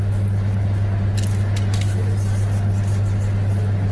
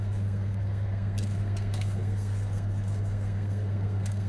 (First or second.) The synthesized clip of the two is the second